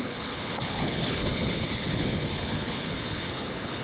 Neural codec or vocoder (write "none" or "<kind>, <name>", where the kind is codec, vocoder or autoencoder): codec, HILCodec